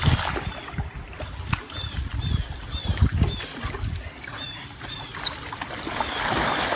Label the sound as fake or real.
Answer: real